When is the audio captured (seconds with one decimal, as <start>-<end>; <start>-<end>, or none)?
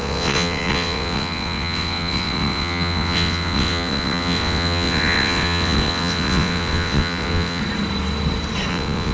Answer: 7.6-8.7